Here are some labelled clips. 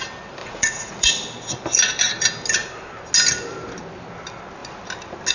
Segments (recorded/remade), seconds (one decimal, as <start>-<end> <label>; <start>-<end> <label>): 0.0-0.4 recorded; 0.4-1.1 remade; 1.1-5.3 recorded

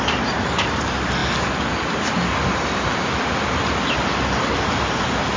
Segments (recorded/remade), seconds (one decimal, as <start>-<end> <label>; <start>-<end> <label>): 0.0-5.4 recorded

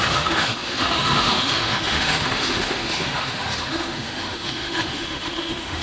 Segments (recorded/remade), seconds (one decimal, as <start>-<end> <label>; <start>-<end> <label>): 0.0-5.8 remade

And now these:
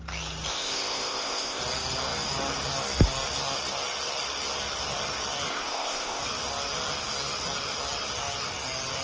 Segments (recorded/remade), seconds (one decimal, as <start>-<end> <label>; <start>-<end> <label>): 0.0-0.5 recorded; 0.5-1.6 remade; 1.6-5.5 recorded; 5.5-6.2 remade; 6.2-9.0 recorded